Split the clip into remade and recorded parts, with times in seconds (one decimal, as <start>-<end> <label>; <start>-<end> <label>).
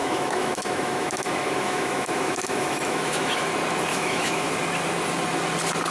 0.0-3.5 remade; 3.5-3.9 recorded; 3.9-4.5 remade; 4.5-5.9 recorded